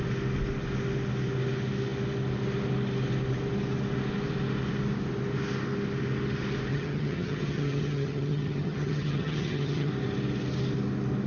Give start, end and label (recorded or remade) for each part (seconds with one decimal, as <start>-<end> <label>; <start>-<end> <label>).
0.0-6.7 recorded; 6.7-9.9 remade; 9.9-11.3 recorded